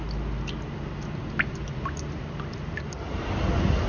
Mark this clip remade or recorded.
recorded